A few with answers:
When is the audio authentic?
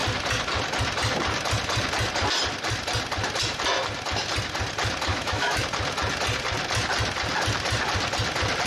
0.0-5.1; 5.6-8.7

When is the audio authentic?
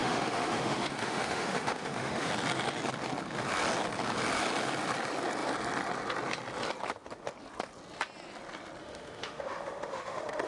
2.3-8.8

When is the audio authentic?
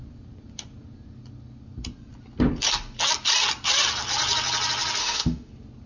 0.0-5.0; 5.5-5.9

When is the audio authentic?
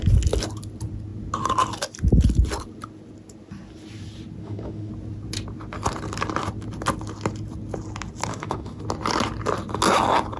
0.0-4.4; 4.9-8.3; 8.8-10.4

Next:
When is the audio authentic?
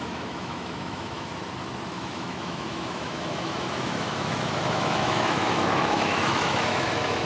1.3-1.9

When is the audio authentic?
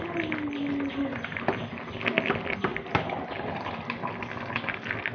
0.0-5.1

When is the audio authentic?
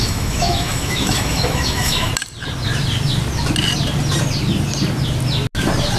2.1-6.0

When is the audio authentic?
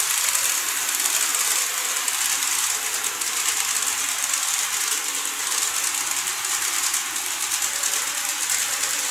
0.0-9.1